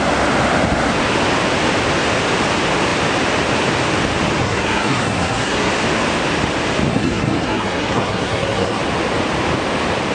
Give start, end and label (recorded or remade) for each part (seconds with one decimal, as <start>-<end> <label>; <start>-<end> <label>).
0.0-4.4 recorded; 4.4-5.7 remade; 5.7-6.9 recorded; 6.9-8.8 remade; 8.8-10.1 recorded